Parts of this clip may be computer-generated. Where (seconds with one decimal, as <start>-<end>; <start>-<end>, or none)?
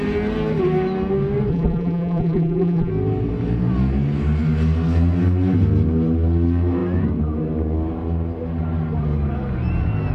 1.5-2.9